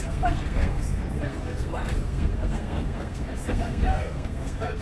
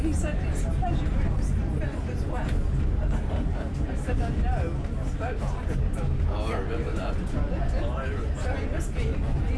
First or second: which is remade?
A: first